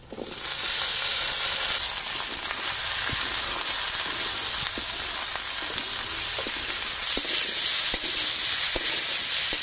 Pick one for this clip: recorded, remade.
recorded